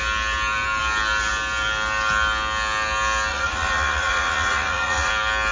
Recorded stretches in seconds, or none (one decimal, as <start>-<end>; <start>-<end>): 0.0-3.3; 5.1-5.5